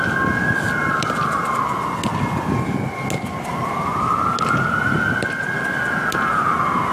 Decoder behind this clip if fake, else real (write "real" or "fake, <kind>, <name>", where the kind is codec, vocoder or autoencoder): real